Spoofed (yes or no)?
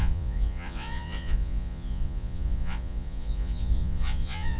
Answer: yes